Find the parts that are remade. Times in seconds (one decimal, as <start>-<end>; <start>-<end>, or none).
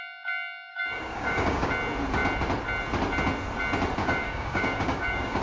0.7-1.7; 4.0-5.4